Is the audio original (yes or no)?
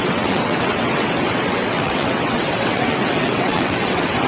no